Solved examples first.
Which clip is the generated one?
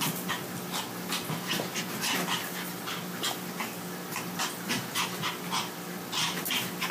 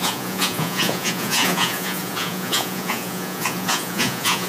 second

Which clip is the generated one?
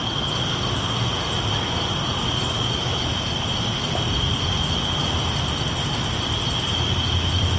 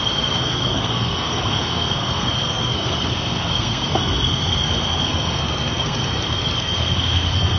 second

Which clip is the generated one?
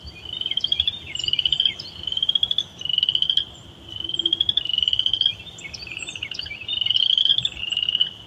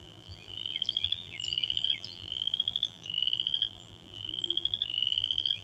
second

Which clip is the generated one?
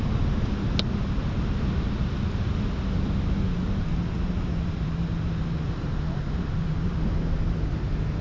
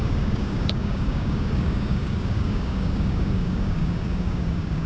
second